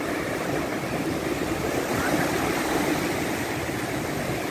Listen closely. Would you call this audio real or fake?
fake